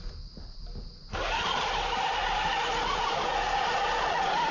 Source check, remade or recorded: recorded